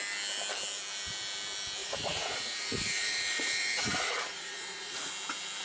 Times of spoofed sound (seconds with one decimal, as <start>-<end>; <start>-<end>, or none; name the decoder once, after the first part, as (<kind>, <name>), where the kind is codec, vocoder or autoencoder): 1.8-5.1 (vocoder, Vocos)